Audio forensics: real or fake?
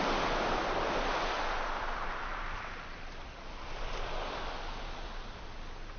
real